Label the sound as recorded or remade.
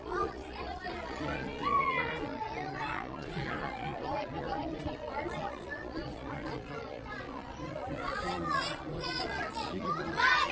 remade